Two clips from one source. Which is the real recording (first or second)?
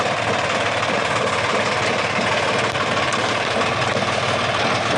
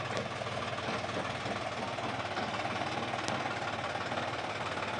second